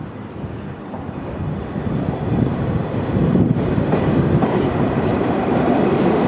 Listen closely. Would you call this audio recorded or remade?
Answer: remade